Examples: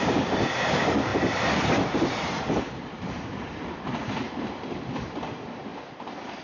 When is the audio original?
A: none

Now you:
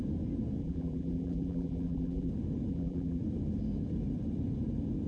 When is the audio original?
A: 0.0-0.6; 2.3-2.7; 3.2-5.1